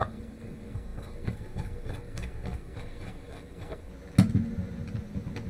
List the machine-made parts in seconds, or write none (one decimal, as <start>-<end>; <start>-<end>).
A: 0.0-3.9